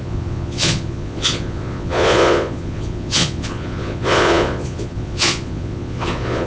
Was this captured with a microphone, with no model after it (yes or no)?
no